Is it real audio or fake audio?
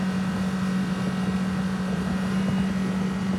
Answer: real